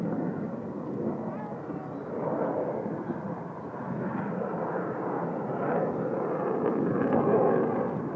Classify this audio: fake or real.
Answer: real